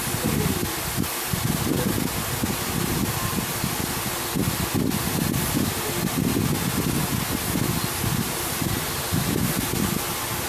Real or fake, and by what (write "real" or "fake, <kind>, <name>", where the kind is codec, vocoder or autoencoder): real